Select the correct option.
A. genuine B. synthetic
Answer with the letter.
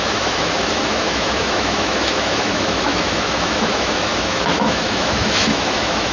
B